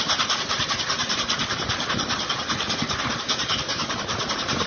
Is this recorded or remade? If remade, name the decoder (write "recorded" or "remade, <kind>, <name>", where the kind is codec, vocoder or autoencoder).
remade, vocoder, BigVGAN v2